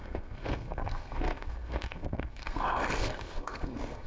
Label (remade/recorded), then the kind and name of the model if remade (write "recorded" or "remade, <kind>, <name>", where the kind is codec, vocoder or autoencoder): remade, codec, SNAC